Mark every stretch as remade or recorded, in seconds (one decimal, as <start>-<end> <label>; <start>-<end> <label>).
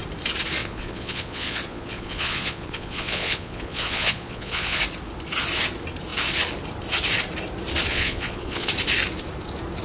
0.0-0.6 recorded; 0.6-4.8 remade; 4.8-7.9 recorded; 7.9-8.7 remade; 8.7-9.8 recorded